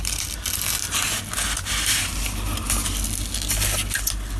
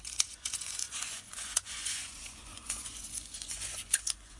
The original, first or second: first